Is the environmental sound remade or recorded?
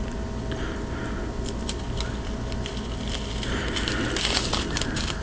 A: recorded